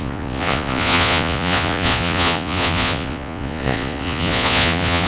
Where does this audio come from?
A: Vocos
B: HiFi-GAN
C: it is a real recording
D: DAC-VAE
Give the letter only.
A